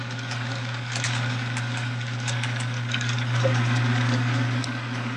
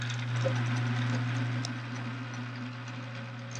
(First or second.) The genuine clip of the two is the second